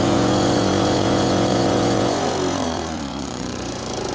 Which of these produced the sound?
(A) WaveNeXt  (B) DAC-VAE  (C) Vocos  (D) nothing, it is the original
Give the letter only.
C